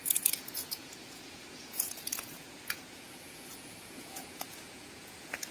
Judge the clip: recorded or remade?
remade